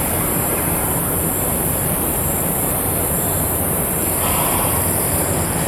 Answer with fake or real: fake